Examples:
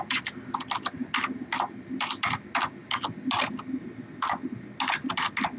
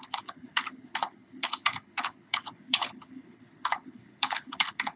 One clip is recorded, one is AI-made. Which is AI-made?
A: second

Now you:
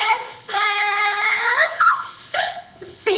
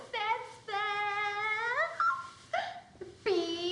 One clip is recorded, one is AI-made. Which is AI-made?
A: first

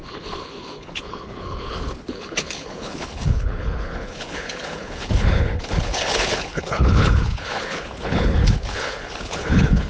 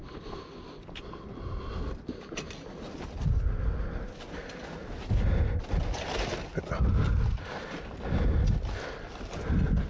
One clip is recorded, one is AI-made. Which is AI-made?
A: first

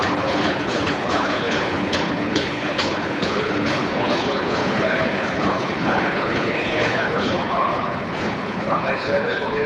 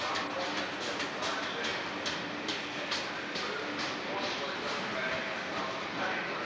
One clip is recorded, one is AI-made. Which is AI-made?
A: first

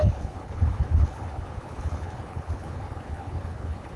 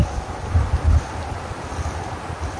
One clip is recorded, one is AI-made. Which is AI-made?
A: first